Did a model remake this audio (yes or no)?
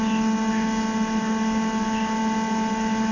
no